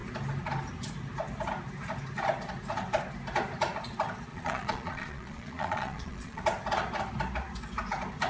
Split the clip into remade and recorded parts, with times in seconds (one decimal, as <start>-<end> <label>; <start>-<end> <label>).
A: 0.0-4.3 recorded; 4.3-6.4 remade; 6.4-8.3 recorded

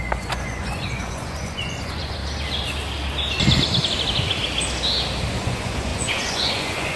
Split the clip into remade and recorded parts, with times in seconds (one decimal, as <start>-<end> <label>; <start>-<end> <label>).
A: 0.0-2.2 remade; 2.2-5.3 recorded; 5.3-7.0 remade

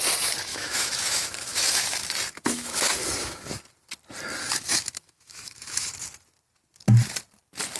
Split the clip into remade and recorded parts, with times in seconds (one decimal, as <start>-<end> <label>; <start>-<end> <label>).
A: 0.0-0.5 recorded; 0.5-3.6 remade; 3.6-4.4 recorded; 4.4-5.9 remade; 5.9-7.8 recorded

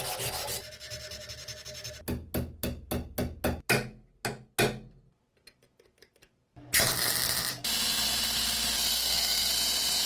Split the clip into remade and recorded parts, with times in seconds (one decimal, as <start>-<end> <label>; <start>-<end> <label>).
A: 0.0-8.9 recorded; 8.9-9.5 remade; 9.5-10.1 recorded

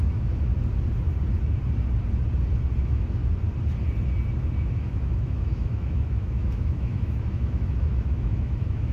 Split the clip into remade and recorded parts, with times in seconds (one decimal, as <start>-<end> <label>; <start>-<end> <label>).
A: 0.0-0.5 remade; 0.5-2.8 recorded; 2.8-3.2 remade; 3.2-4.6 recorded; 4.6-8.9 remade